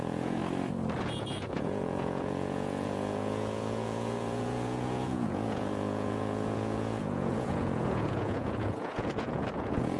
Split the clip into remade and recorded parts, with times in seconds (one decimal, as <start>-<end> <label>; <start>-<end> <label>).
0.0-0.4 remade; 0.4-1.0 recorded; 1.0-10.0 remade